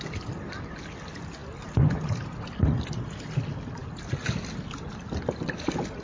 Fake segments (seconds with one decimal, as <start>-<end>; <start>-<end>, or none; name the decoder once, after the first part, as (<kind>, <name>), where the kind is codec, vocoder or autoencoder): none